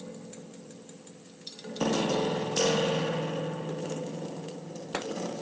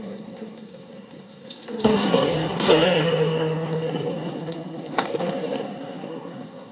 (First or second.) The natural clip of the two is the first